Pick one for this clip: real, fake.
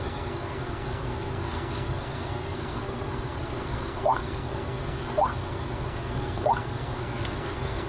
fake